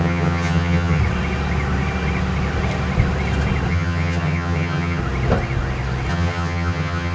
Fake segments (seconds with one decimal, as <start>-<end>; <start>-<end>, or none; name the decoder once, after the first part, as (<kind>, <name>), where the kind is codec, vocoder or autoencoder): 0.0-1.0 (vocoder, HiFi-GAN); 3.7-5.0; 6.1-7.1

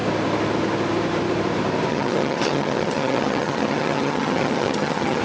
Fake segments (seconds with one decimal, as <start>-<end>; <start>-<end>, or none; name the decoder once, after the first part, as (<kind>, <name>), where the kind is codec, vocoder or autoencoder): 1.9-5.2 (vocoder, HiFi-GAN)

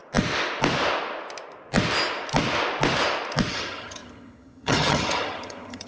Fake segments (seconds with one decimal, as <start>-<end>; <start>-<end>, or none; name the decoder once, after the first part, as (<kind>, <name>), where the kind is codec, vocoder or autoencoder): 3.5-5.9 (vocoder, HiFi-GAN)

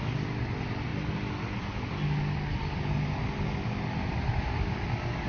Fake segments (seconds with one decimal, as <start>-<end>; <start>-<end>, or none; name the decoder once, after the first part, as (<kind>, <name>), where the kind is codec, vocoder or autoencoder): none

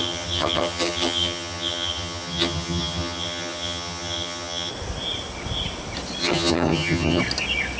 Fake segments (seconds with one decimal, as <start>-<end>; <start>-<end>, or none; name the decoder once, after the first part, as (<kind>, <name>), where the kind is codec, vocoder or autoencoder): 0.0-4.7 (vocoder, HiFi-GAN); 6.2-7.2

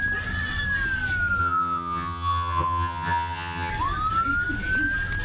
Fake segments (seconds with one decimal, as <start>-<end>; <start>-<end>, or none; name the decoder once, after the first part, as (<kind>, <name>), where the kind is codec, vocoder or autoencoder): 1.4-3.7 (vocoder, HiFi-GAN)

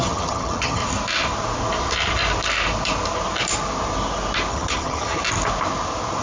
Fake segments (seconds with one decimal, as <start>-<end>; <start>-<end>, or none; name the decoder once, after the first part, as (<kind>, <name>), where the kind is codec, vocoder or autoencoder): 0.0-0.8 (vocoder, HiFi-GAN); 4.5-5.2